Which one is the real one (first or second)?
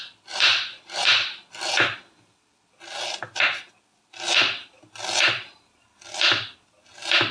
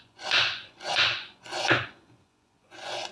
first